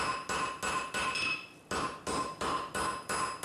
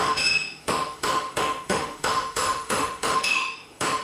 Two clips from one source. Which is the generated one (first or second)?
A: second